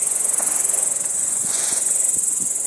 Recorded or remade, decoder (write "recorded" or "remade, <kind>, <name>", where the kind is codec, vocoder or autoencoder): remade, vocoder, Vocos